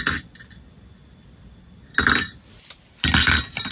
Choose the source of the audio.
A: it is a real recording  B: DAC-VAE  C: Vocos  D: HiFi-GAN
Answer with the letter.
A